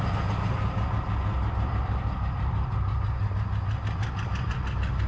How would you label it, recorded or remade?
recorded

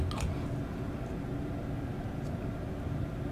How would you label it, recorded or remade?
recorded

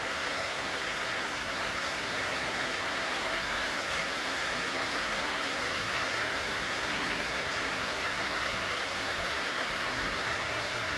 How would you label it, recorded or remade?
remade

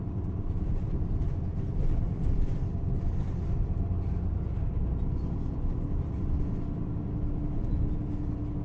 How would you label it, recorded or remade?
recorded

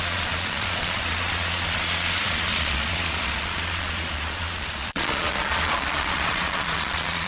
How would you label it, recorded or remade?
remade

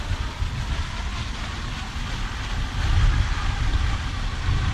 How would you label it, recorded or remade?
recorded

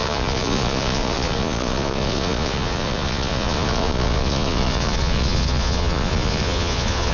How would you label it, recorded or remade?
remade